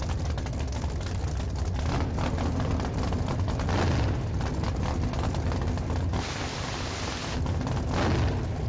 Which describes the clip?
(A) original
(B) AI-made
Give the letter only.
A